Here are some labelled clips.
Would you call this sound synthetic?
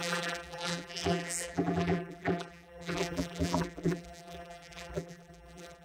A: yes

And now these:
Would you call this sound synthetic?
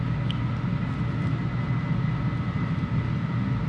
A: no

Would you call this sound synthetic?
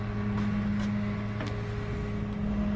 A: no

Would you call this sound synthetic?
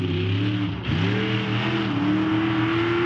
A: no